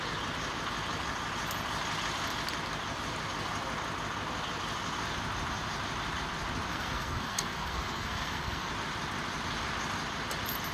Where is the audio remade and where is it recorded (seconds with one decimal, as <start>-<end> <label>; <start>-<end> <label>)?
0.0-6.7 recorded; 6.7-8.7 remade; 8.7-10.7 recorded